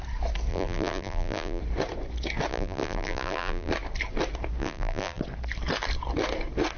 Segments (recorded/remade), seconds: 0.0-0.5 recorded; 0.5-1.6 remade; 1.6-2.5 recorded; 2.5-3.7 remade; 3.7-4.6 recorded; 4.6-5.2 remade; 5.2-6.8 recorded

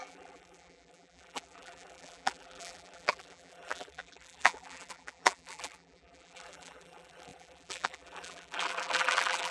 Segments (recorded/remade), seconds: 0.0-9.5 remade

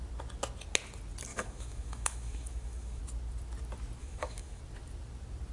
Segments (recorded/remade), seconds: 0.0-1.3 recorded; 1.3-3.0 remade; 3.0-4.0 recorded; 4.0-4.6 remade; 4.6-5.5 recorded